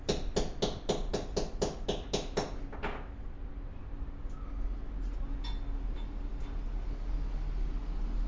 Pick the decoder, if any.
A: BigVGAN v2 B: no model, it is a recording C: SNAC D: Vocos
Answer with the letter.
B